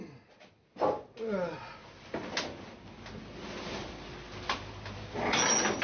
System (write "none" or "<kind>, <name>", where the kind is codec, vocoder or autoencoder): none